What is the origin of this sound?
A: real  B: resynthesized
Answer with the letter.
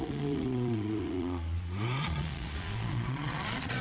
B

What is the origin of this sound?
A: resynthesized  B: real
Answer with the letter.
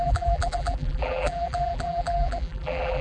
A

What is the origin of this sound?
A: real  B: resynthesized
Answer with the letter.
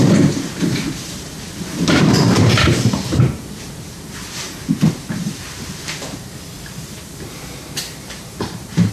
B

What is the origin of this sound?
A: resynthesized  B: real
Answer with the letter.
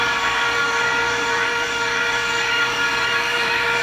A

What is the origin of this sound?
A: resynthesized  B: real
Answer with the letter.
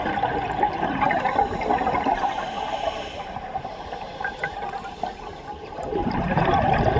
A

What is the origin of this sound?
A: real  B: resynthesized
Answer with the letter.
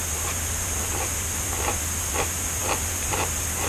A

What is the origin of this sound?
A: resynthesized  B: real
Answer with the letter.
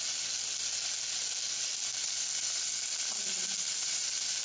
B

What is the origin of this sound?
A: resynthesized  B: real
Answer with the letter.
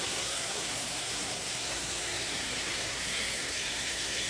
A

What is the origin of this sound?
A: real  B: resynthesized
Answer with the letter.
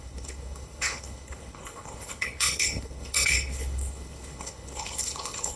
B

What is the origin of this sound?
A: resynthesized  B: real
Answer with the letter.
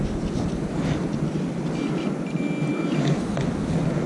B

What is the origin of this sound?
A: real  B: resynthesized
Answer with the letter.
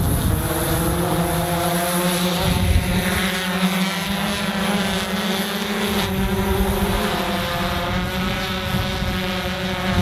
A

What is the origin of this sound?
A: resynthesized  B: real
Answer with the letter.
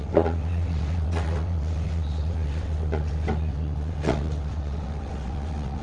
A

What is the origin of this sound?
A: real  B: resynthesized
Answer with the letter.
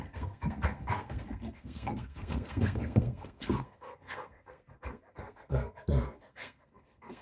B